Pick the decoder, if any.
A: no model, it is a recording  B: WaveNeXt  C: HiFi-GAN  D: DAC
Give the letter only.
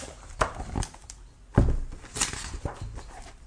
A